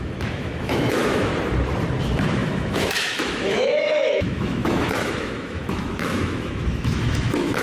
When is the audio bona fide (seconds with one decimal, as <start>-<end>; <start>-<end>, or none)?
1.3-2.0